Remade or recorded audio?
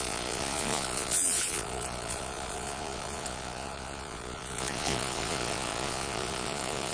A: remade